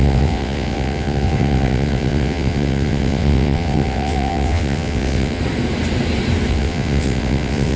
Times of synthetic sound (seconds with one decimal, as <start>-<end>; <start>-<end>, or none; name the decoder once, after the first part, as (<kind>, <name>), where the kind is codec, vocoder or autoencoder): 0.0-5.4 (vocoder, WaveNeXt); 6.5-7.8